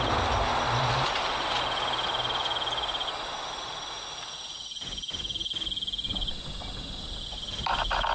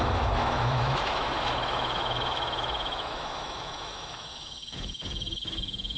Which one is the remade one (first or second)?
second